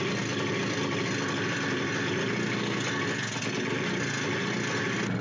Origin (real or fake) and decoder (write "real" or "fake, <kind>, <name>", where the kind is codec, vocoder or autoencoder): real